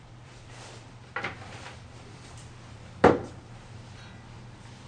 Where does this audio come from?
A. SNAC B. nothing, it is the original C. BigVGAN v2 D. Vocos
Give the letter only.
C